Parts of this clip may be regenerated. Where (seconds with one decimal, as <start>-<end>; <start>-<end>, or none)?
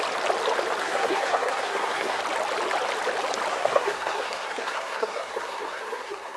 0.8-2.2; 3.5-6.4